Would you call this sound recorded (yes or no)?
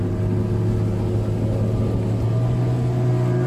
yes